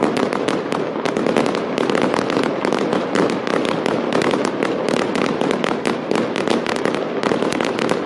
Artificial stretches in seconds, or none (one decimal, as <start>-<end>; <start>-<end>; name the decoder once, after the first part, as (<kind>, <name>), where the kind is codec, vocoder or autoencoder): none